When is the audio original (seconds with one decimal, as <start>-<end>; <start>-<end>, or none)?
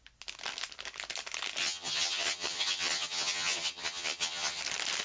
0.0-1.6; 4.6-5.0